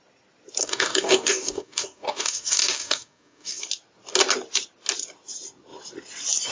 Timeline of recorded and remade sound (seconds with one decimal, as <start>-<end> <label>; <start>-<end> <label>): 0.0-0.6 recorded; 0.6-3.6 remade; 3.6-6.5 recorded